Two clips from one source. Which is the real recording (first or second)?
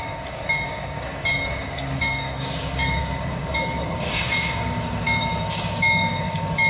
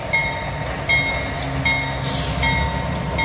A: second